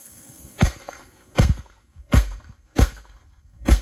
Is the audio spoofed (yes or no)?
yes